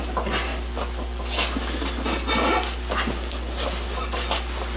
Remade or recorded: recorded